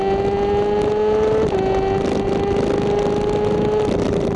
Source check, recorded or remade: recorded